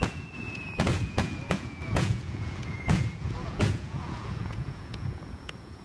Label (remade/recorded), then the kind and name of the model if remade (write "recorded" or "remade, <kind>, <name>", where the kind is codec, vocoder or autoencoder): remade, vocoder, Vocos